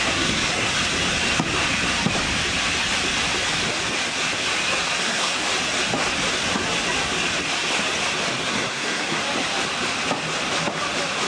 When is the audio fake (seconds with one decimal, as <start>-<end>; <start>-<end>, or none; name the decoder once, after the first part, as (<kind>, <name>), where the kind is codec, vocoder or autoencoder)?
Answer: 0.0-0.7 (codec, SNAC); 5.0-5.4; 8.5-9.2